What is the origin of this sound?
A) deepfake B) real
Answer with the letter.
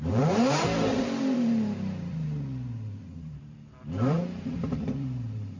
A